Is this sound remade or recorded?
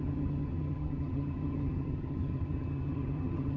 remade